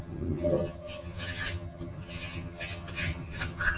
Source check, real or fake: fake